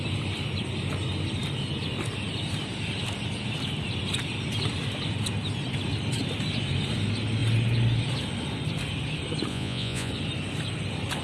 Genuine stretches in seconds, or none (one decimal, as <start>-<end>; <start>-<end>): 0.0-9.5; 10.1-11.2

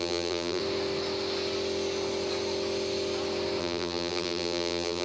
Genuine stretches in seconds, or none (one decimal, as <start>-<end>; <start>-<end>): 0.6-3.6

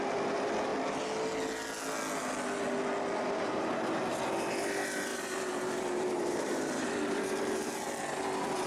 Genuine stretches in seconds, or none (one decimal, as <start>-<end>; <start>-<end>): 0.0-5.1; 7.9-8.7

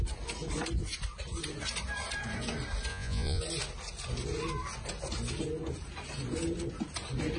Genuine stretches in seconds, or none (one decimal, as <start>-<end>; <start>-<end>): 0.0-2.9; 3.4-7.4